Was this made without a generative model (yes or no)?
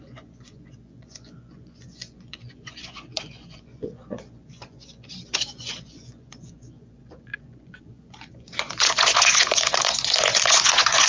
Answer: no